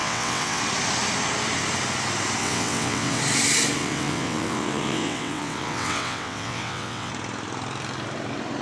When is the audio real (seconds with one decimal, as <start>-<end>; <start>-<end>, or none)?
0.6-2.4; 3.2-3.8; 7.1-8.6